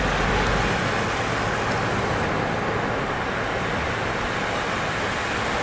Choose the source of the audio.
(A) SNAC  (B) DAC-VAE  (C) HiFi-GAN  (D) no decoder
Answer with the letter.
D